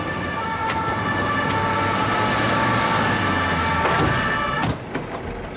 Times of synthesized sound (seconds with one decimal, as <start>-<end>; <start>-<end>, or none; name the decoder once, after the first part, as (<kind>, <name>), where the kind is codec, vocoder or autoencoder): 0.0-0.6 (vocoder, BigVGAN v2); 4.0-4.6